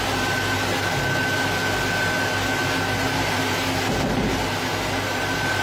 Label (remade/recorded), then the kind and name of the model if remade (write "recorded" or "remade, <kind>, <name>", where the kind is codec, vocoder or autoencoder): recorded